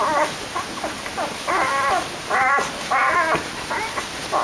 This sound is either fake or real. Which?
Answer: fake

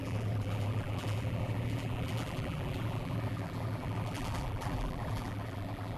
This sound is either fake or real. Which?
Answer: fake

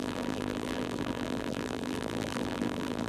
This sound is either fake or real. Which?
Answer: fake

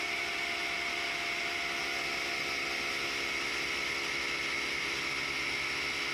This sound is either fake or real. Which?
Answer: real